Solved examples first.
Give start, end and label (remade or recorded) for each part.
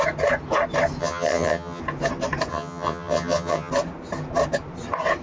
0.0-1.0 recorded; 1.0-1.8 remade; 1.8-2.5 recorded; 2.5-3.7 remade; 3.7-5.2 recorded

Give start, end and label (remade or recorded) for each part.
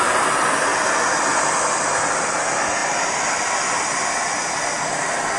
0.0-5.4 recorded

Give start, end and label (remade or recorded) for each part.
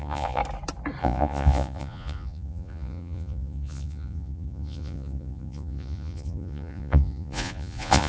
0.0-0.4 remade; 0.4-1.0 recorded; 1.0-8.1 remade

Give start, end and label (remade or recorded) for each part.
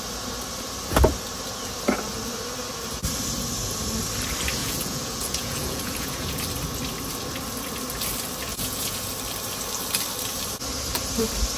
0.0-4.6 recorded; 4.6-6.4 remade; 6.4-8.5 recorded; 8.5-9.1 remade; 9.1-11.6 recorded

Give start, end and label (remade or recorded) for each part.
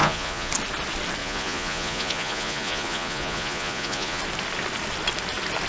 0.0-0.5 remade; 0.5-1.2 recorded; 1.2-4.2 remade; 4.2-5.7 recorded